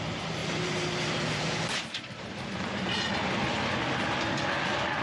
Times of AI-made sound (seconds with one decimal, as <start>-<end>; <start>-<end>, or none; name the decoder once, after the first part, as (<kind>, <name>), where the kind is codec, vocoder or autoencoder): 0.4-3.1 (vocoder, BigVGAN v2)